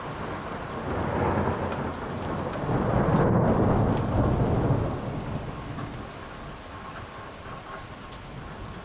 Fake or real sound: real